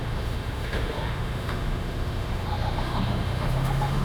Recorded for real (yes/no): no